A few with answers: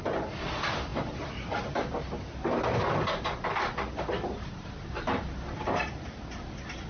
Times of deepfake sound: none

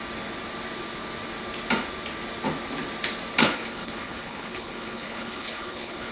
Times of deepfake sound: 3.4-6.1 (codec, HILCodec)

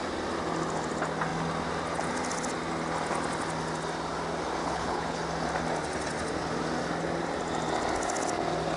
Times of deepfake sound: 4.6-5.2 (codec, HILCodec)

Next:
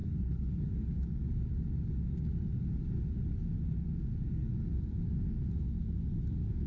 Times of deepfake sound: 0.0-0.7 (codec, HILCodec)

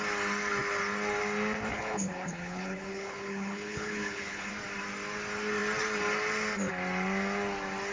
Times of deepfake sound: 1.7-4.5 (codec, HILCodec)

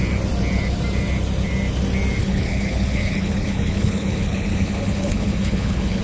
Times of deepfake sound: 2.2-6.0 (codec, HILCodec)

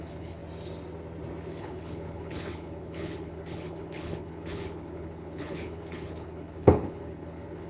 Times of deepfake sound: 0.0-0.4 (codec, HILCodec); 1.6-7.7